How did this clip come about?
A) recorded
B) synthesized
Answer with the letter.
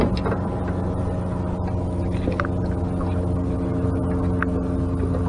A